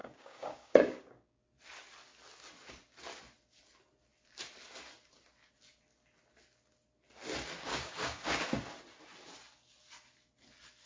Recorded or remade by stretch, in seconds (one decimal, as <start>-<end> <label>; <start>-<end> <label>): 0.0-1.4 remade; 1.4-7.7 recorded; 7.7-8.4 remade; 8.4-10.9 recorded